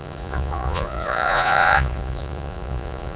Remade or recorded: remade